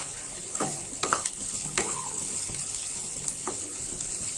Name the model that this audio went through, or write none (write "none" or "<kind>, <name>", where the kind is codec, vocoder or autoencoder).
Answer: codec, HILCodec